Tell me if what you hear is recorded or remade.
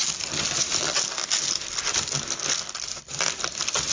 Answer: recorded